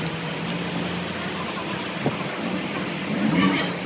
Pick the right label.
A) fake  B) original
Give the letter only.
B